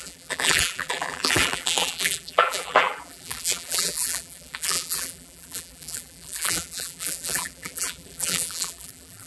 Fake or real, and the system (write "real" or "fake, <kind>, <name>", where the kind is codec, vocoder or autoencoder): fake, vocoder, BigVGAN v2